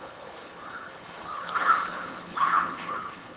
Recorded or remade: remade